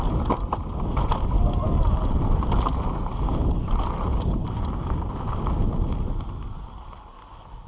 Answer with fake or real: real